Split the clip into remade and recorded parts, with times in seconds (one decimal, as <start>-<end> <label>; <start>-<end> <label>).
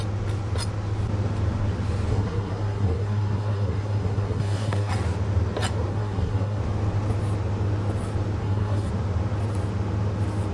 0.0-2.1 recorded; 2.1-4.9 remade; 4.9-5.9 recorded; 5.9-6.6 remade; 6.6-8.4 recorded; 8.4-8.9 remade; 8.9-10.5 recorded